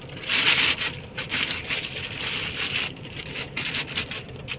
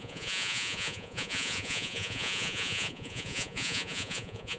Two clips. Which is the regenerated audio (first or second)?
second